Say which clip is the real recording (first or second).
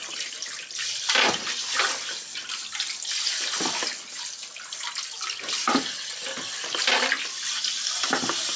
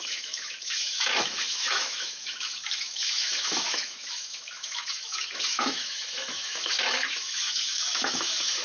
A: first